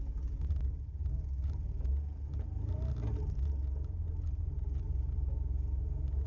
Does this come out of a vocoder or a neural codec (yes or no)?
no